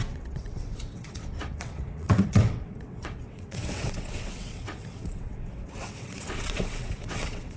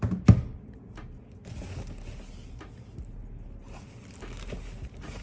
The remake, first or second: first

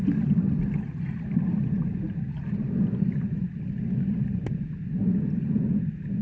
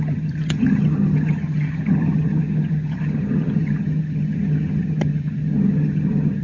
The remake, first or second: second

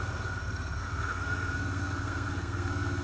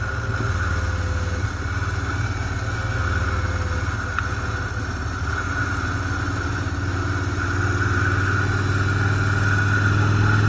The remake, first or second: first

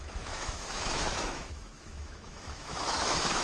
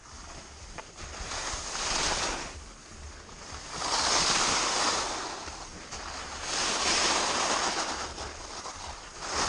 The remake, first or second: first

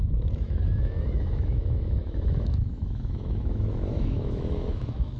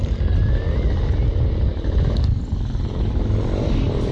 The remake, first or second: first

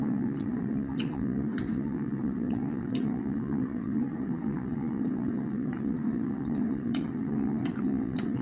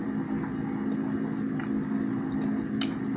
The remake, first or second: first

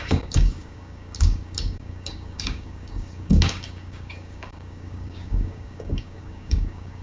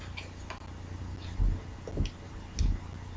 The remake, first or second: first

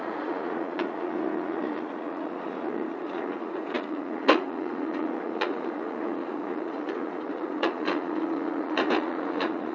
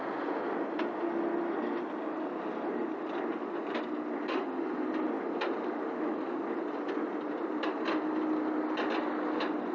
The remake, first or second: first